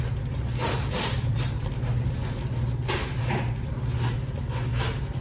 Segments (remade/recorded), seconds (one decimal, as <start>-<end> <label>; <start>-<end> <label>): 0.0-0.6 recorded; 0.6-1.6 remade; 1.6-5.2 recorded